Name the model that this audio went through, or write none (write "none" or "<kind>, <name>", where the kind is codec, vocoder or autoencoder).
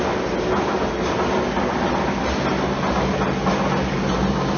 none